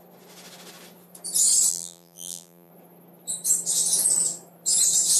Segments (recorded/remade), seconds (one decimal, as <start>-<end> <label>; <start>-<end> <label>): 0.0-1.7 recorded; 1.7-2.7 remade; 2.7-5.2 recorded